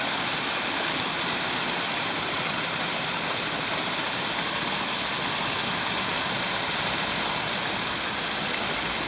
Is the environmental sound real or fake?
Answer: real